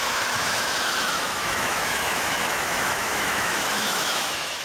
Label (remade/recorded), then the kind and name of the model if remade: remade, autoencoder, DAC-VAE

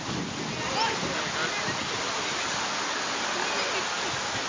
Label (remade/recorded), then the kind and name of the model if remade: recorded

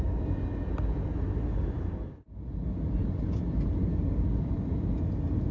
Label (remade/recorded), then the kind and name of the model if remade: recorded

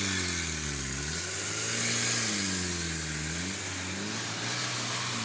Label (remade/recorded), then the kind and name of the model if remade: recorded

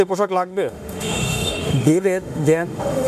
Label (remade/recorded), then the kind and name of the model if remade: remade, autoencoder, DAC-VAE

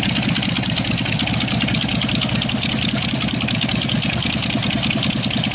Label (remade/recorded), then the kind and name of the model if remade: recorded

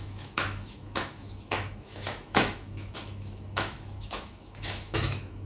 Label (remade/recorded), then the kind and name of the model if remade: remade, autoencoder, DAC-VAE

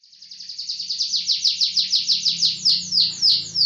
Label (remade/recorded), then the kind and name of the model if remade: recorded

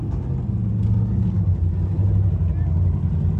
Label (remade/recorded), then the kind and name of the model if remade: recorded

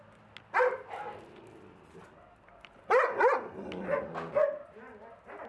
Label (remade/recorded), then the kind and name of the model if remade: recorded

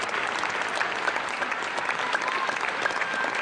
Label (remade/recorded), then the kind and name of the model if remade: recorded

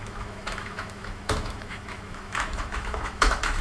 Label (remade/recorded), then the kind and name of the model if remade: remade, autoencoder, DAC-VAE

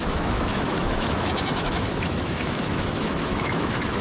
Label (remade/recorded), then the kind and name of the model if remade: remade, autoencoder, DAC-VAE